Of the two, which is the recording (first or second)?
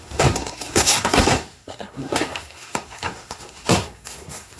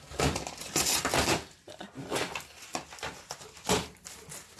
second